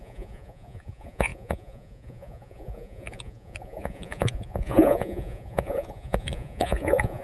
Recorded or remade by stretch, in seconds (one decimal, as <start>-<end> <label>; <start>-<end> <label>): 0.0-7.2 remade